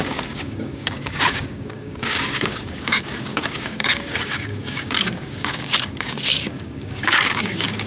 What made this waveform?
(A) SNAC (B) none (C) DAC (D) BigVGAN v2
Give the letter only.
C